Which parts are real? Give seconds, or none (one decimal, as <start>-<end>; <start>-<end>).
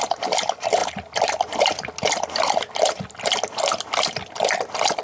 0.0-5.0